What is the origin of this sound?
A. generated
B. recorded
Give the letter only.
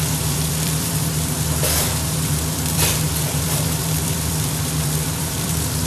A